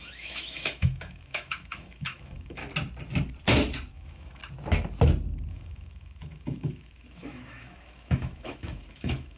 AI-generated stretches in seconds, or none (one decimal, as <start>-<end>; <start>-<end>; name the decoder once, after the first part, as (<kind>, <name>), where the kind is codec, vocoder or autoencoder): 0.0-2.6 (autoencoder, DAC-VAE); 3.9-4.4; 5.5-9.4